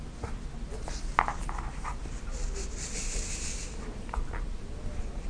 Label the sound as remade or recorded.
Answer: recorded